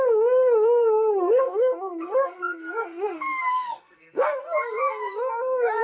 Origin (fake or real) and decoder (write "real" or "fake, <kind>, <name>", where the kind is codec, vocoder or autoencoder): fake, codec, SNAC